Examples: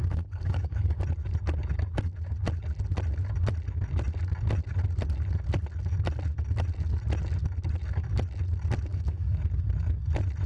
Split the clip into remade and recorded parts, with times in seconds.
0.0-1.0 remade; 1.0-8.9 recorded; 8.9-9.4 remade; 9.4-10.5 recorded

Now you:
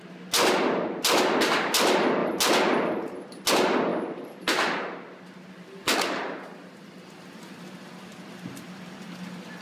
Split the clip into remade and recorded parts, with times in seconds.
0.0-9.6 recorded